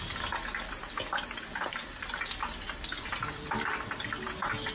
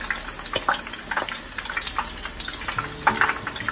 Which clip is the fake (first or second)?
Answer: first